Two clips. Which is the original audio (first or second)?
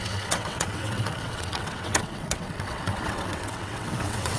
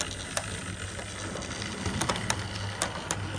second